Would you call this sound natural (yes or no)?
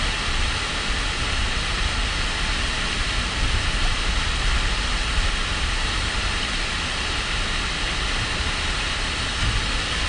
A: yes